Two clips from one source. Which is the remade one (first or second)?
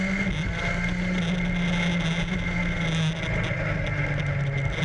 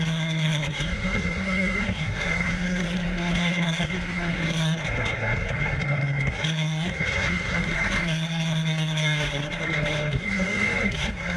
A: second